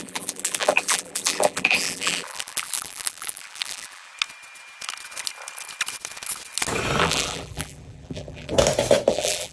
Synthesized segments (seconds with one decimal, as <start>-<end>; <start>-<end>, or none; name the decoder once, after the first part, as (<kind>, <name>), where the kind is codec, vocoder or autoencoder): 0.0-4.1 (vocoder, BigVGAN v2); 7.0-8.5; 9.1-9.5